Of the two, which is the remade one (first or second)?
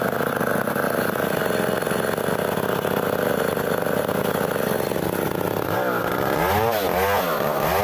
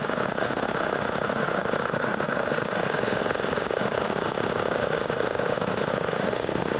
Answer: second